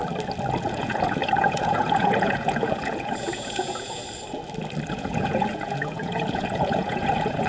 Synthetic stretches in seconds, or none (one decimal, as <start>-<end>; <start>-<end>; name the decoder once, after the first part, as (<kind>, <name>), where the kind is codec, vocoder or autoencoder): 0.6-4.0 (vocoder, Vocos); 4.9-7.5